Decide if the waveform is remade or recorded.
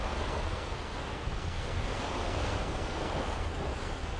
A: remade